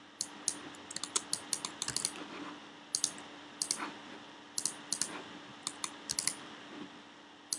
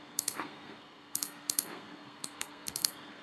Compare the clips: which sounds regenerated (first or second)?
second